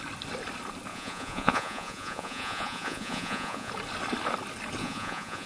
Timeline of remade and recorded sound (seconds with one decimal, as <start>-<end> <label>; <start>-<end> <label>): 0.0-0.9 recorded; 0.9-3.7 remade; 3.7-4.8 recorded; 4.8-5.5 remade